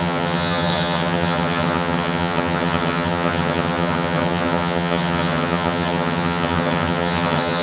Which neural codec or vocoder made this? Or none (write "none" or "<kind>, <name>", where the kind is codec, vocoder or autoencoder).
vocoder, HiFi-GAN